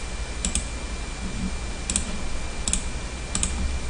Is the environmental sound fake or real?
real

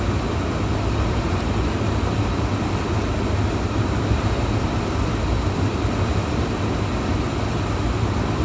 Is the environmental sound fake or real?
real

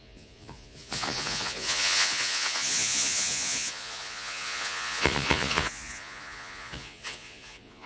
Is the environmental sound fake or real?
fake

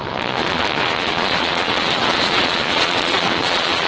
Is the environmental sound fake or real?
fake